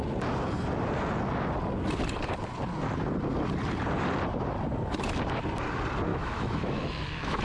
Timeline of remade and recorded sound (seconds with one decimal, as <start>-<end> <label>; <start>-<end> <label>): 0.0-6.1 recorded; 6.1-7.4 remade